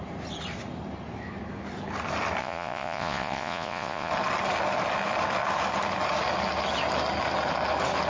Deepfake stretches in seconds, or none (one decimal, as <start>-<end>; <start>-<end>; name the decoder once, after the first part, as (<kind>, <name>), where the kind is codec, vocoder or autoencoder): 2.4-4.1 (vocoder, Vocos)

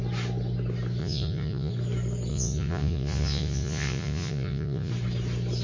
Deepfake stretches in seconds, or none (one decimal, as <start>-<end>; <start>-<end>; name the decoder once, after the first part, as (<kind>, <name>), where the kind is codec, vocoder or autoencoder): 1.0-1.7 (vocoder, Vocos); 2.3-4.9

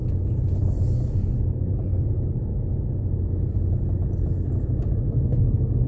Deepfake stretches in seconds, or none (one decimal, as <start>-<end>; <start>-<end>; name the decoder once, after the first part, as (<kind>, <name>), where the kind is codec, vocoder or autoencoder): none

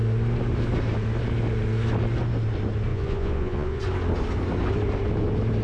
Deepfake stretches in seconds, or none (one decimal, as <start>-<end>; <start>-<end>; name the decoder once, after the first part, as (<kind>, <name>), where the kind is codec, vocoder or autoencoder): 2.9-3.8 (vocoder, Vocos)

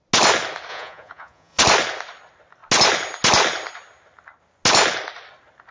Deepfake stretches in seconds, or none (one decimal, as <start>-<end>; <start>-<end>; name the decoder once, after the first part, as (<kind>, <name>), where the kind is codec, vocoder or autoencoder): 0.7-1.6 (vocoder, Vocos)

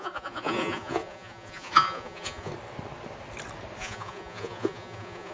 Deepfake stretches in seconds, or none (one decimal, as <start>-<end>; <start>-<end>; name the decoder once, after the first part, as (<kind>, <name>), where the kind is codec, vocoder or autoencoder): 0.0-2.5 (vocoder, Vocos); 3.8-5.3

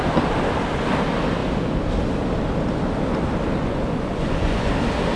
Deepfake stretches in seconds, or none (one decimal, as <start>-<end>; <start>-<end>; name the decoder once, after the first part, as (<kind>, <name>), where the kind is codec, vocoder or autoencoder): 3.6-4.7 (vocoder, Vocos)

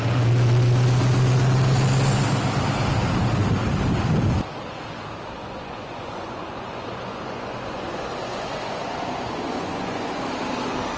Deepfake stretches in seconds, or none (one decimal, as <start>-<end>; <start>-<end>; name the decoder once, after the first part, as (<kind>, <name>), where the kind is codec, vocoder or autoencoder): 5.4-10.2 (vocoder, Vocos)